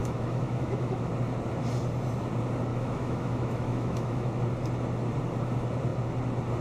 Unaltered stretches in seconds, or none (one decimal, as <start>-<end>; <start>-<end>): 1.1-2.7; 4.4-6.6